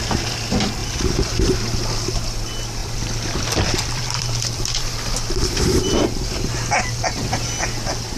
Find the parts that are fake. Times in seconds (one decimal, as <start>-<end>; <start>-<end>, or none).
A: 0.8-1.6; 2.8-6.3